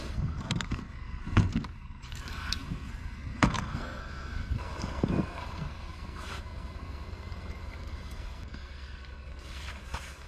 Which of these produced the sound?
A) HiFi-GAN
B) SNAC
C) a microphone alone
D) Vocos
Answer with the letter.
B